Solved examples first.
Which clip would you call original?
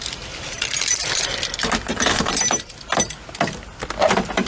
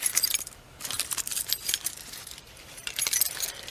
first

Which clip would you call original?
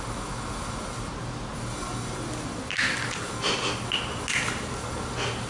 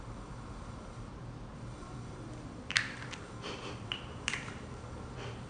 first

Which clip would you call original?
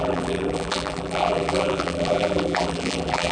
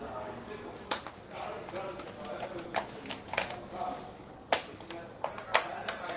second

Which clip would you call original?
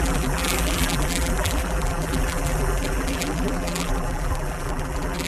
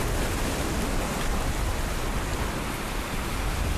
second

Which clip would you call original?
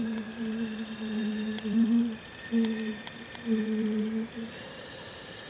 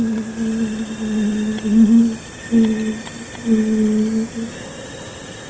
second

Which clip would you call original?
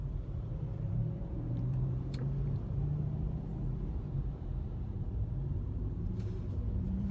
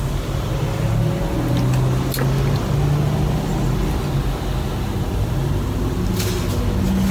second